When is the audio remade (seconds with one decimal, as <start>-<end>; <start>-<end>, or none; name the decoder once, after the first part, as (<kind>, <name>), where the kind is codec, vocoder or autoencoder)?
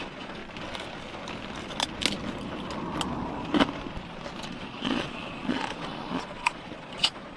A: 0.0-0.4 (vocoder, Vocos); 4.5-7.4